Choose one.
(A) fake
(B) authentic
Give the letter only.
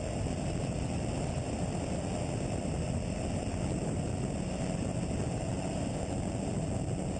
B